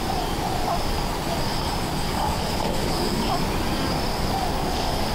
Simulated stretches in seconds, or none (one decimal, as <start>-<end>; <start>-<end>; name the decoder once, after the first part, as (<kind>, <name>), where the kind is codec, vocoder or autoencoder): 2.1-3.3 (codec, DAC); 4.1-5.1